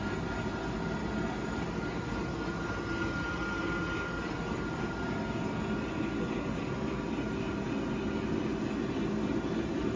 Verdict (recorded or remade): recorded